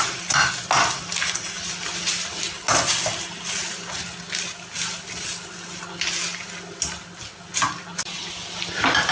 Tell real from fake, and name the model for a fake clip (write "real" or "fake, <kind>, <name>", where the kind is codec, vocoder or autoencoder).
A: real